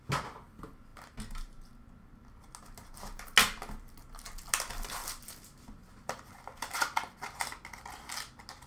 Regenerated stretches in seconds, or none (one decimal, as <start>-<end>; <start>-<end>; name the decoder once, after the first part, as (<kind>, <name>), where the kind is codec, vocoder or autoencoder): none